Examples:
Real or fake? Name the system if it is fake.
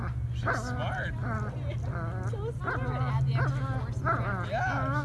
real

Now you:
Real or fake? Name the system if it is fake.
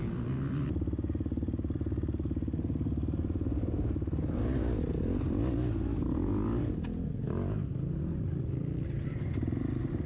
real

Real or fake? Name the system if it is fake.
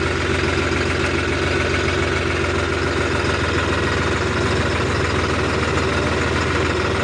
real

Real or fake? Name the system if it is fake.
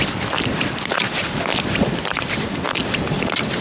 fake, vocoder, BigVGAN v2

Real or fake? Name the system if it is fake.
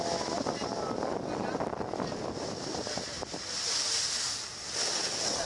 real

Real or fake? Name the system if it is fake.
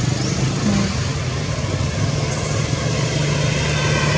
real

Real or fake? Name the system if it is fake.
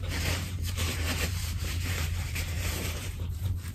fake, vocoder, BigVGAN v2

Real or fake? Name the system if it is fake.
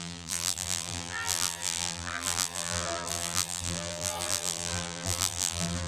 fake, vocoder, BigVGAN v2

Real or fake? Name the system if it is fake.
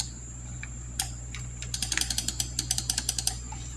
fake, vocoder, BigVGAN v2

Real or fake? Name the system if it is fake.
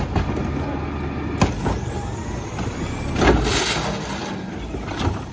real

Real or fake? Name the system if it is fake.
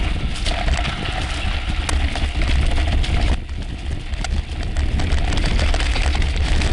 real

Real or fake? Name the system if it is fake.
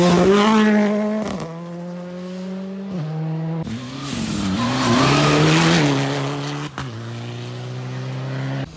real